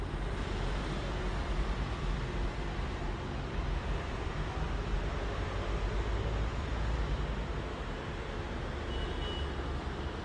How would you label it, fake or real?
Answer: fake